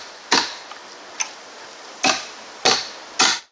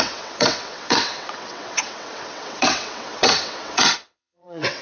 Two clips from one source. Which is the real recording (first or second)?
first